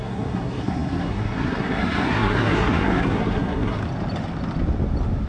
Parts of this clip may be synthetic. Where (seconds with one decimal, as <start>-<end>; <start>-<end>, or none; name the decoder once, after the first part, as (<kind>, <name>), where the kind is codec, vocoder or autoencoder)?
0.0-3.8 (codec, SNAC)